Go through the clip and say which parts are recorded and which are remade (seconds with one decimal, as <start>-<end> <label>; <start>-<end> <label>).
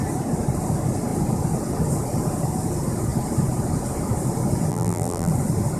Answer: 0.0-4.7 recorded; 4.7-5.3 remade; 5.3-5.8 recorded